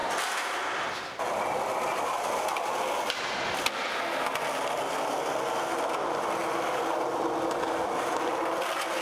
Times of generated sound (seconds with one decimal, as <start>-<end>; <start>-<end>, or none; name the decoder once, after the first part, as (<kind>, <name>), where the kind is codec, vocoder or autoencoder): none